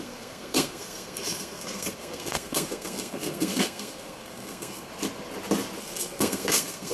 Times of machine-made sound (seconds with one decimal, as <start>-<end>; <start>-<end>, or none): 0.0-4.9; 5.8-6.9